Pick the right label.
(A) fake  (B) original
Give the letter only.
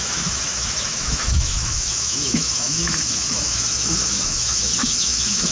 A